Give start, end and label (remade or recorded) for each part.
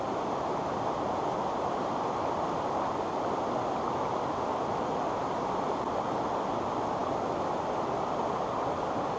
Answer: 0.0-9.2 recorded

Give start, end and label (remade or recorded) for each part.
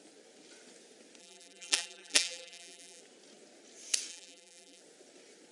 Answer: 0.0-1.2 recorded; 1.2-3.0 remade; 3.0-4.1 recorded; 4.1-4.8 remade; 4.8-5.5 recorded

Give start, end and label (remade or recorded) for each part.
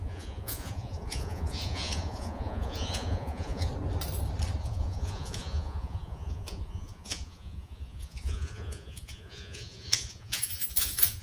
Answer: 0.0-3.7 remade; 3.7-4.6 recorded; 4.6-11.2 remade